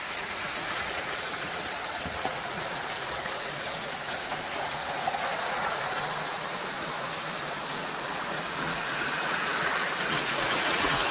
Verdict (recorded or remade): remade